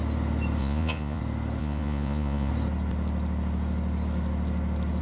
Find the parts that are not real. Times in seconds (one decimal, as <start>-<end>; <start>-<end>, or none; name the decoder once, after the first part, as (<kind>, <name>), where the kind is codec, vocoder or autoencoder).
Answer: 0.6-1.2 (vocoder, Vocos); 1.6-2.5